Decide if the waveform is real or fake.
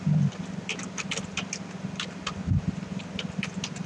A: real